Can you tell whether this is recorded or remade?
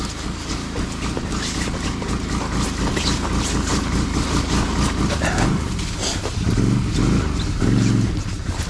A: recorded